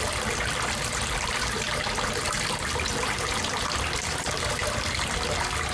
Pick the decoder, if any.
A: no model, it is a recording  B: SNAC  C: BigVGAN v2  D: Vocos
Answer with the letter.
A